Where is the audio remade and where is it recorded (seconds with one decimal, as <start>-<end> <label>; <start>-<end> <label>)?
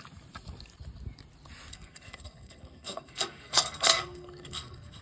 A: 0.0-1.7 recorded; 1.7-5.0 remade